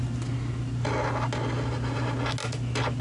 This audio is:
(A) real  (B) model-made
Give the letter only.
A